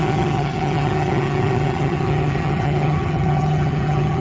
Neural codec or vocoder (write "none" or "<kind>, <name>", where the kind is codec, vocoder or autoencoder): vocoder, HiFi-GAN